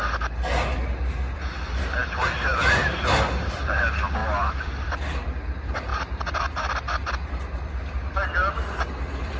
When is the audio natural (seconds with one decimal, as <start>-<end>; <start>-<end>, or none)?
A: 0.0-9.4